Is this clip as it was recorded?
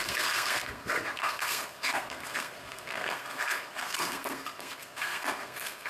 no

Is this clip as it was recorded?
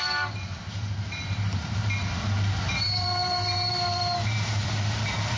no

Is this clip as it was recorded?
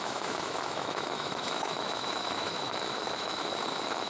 no